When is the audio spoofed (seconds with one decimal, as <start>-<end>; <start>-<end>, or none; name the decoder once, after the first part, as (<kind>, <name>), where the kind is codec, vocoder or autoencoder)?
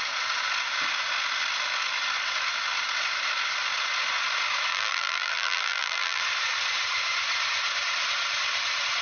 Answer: 4.7-6.2 (vocoder, BigVGAN v2)